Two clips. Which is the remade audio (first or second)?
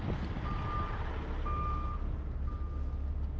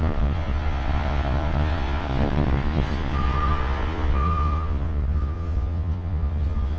second